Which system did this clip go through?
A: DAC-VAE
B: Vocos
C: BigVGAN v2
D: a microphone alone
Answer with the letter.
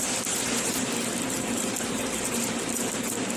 D